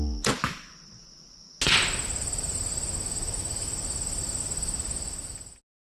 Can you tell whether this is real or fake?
real